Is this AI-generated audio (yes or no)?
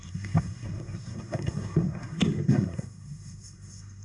yes